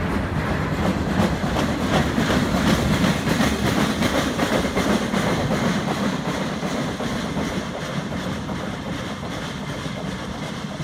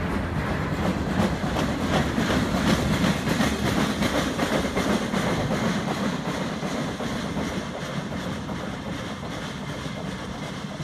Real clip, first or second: second